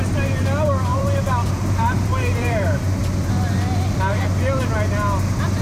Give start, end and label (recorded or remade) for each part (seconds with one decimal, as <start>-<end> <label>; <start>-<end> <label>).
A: 0.0-0.9 recorded; 0.9-3.3 remade; 3.3-5.6 recorded